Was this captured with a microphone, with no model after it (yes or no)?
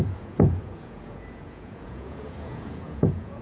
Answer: no